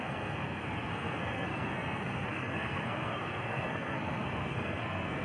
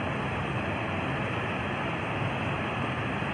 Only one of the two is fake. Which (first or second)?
first